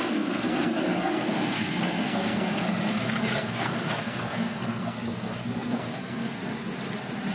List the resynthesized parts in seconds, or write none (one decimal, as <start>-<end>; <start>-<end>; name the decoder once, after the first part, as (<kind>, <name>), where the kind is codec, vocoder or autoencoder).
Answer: 0.0-6.4 (codec, SNAC)